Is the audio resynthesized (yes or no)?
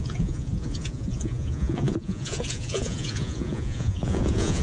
yes